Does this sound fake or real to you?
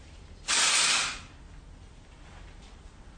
real